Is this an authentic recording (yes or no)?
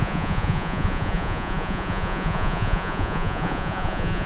no